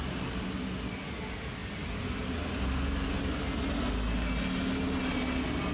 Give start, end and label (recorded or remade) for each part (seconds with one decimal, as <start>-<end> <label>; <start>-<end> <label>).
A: 0.0-5.7 recorded